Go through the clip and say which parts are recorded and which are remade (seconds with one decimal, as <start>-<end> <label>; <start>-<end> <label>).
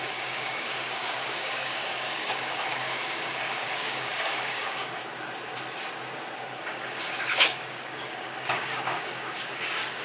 0.0-5.0 remade; 5.0-6.6 recorded; 6.6-10.0 remade